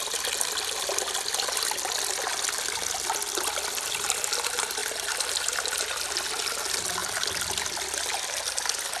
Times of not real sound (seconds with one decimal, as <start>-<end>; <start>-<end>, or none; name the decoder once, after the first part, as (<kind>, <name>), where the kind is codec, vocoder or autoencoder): none